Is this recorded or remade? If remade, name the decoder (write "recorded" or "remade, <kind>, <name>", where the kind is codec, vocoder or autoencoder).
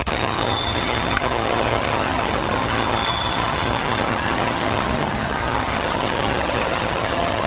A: remade, vocoder, HiFi-GAN